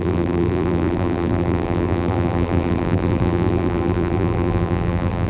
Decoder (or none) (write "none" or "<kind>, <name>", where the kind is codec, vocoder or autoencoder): vocoder, BigVGAN v2